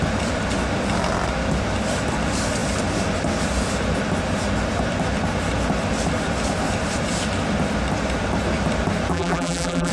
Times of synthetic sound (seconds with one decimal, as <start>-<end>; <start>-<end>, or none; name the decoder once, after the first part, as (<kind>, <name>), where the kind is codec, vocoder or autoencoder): 9.1-9.9 (vocoder, BigVGAN v2)